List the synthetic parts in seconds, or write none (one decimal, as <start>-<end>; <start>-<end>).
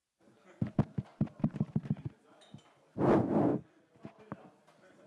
1.1-2.3; 3.5-4.2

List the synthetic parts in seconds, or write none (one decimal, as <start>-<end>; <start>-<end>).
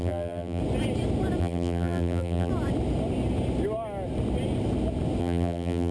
0.0-0.6; 1.4-2.5; 5.2-5.9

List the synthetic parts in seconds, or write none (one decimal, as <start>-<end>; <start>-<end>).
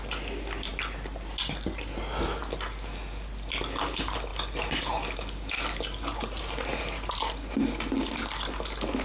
4.3-6.8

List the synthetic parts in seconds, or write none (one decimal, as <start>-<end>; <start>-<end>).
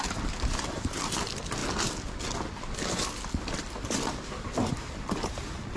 none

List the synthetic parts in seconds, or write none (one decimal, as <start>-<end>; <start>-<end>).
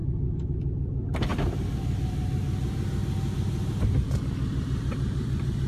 0.0-1.3; 3.7-5.7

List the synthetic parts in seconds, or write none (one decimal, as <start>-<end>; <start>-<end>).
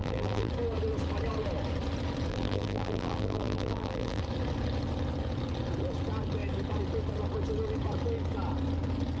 0.0-0.5; 2.3-4.2